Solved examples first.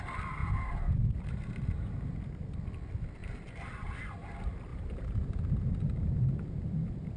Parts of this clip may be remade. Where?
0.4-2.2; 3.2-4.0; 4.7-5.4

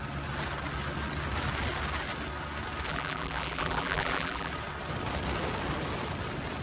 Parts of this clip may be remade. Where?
2.9-4.5

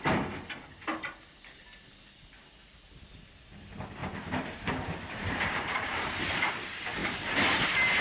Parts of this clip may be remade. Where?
4.0-6.5; 7.0-7.6

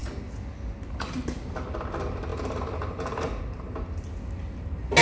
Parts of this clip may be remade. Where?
2.3-3.4

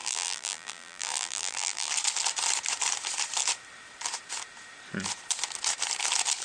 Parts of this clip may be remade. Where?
0.0-1.9